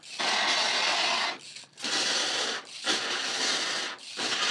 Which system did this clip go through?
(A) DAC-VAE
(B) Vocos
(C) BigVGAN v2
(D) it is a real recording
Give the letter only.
D